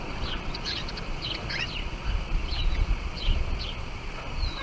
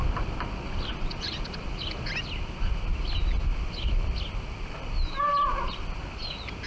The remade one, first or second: first